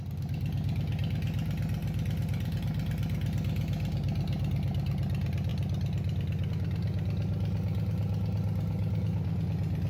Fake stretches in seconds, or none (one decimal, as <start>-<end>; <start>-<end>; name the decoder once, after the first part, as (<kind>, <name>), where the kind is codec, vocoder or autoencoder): 1.8-2.6 (vocoder, BigVGAN v2)